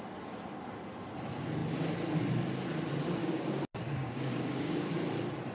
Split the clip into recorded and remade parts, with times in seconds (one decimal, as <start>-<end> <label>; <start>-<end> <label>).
0.0-3.2 recorded; 3.2-4.9 remade; 4.9-5.5 recorded